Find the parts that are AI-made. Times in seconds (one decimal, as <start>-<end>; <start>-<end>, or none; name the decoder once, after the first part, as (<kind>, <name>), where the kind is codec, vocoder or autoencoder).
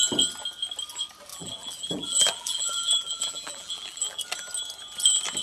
1.3-4.2 (vocoder, BigVGAN v2)